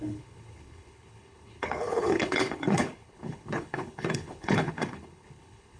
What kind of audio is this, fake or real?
fake